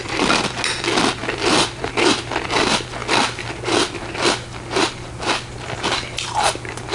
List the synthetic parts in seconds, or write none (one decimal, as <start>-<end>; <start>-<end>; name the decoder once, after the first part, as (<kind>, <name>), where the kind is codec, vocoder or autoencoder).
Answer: 1.2-1.8 (vocoder, BigVGAN v2)